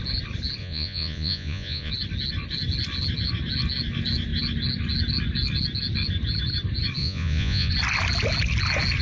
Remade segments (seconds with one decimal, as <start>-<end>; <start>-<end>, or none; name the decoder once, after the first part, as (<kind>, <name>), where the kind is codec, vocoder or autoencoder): 0.6-1.9 (vocoder, Vocos); 7.0-7.7